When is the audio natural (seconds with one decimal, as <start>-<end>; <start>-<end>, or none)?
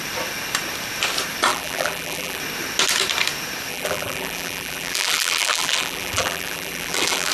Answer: 0.0-1.5; 2.4-3.7